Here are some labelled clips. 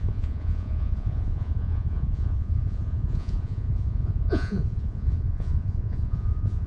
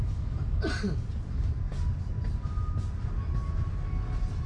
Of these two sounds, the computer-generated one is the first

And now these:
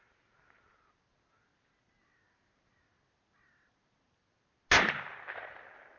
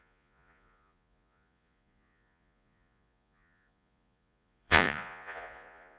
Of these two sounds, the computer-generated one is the second